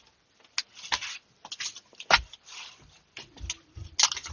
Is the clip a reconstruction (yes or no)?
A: no